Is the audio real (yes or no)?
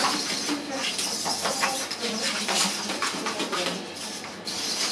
yes